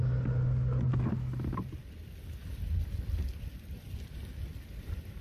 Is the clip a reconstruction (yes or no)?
no